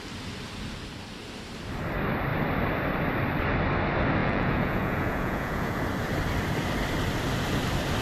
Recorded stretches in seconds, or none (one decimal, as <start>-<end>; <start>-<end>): 0.0-4.2; 5.8-8.0

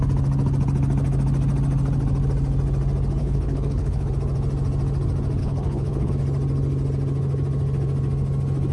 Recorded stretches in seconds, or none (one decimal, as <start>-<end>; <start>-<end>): 0.0-3.2; 4.1-5.4; 6.1-8.7

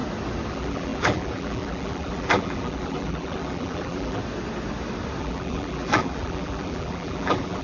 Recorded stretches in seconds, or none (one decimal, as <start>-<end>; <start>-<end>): 0.0-0.5; 4.2-5.2

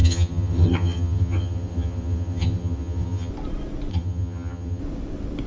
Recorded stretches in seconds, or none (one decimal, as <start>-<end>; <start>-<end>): 3.3-3.9; 4.8-5.5

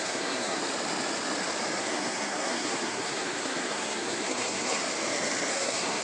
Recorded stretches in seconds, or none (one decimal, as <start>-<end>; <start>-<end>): 0.6-1.8; 4.8-5.5

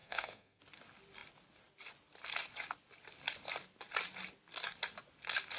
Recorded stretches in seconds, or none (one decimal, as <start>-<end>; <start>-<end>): 0.6-5.6